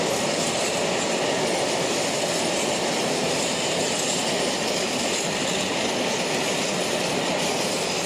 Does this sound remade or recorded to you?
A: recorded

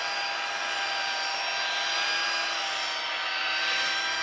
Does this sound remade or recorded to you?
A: recorded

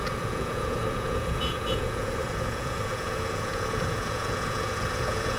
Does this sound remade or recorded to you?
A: remade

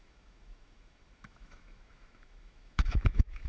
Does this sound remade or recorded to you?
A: remade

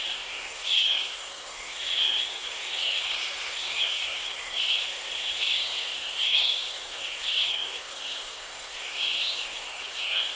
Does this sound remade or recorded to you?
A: remade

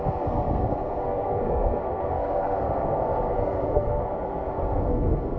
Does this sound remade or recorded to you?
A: remade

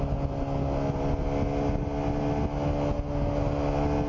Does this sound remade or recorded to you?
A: recorded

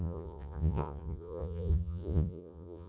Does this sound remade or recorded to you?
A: remade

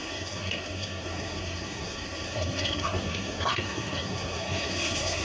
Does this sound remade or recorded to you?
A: remade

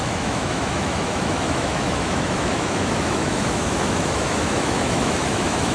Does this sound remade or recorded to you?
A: remade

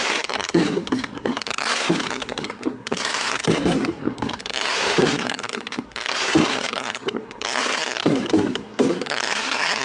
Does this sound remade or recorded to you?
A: remade